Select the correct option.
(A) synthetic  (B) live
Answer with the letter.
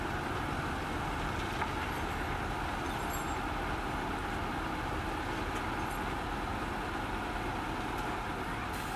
B